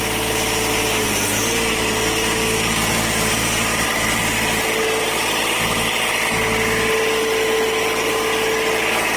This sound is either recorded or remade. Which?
recorded